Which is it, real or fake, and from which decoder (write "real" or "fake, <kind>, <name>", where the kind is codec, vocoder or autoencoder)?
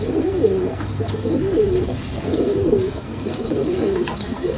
fake, codec, SNAC